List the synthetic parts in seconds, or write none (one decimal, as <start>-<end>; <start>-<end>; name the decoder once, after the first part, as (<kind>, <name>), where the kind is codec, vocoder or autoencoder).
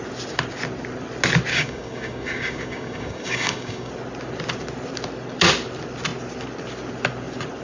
1.5-3.9 (codec, DAC)